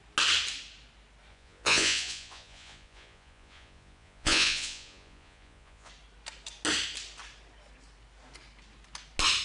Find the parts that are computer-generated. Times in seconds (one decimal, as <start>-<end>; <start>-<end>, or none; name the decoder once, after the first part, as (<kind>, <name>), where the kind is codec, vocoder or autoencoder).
1.3-5.9 (vocoder, Vocos)